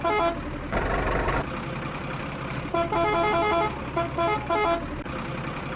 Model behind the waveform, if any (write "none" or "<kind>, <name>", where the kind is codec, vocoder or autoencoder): none